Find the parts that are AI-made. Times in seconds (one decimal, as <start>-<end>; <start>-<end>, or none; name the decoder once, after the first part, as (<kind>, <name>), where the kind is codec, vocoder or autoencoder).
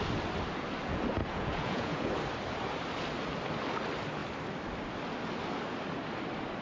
1.2-2.1 (vocoder, Vocos)